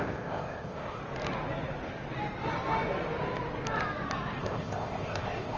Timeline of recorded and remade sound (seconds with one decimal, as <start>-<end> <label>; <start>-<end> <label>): 0.0-1.0 remade; 1.0-4.4 recorded; 4.4-5.6 remade